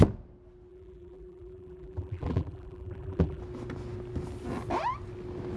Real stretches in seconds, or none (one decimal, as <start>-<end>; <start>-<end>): 0.0-0.7; 3.4-5.6